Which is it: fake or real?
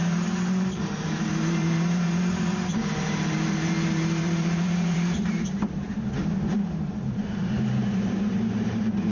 fake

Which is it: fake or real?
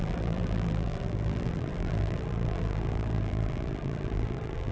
fake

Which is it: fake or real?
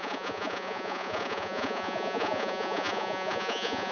fake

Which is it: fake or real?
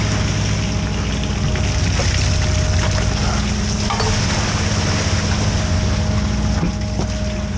real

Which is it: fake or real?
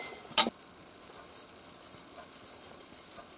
fake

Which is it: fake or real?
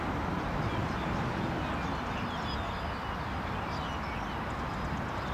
real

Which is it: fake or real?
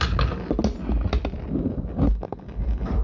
real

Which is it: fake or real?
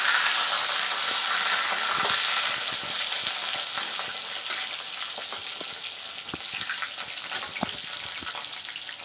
real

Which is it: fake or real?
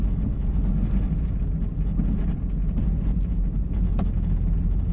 real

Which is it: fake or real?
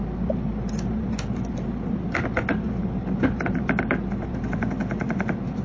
real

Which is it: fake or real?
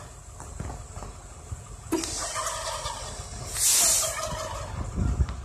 real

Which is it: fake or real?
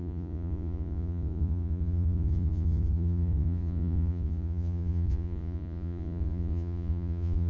fake